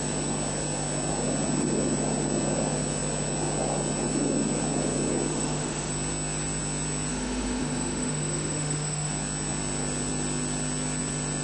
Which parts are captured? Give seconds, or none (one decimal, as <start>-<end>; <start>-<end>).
0.0-5.3; 5.9-7.1; 9.1-11.4